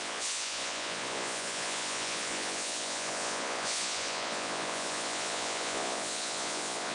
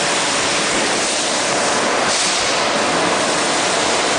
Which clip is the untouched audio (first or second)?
second